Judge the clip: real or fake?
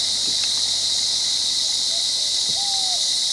real